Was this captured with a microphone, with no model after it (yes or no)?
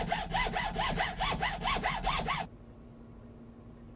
yes